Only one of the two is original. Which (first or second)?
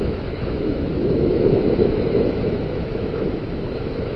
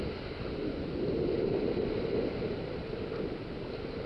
second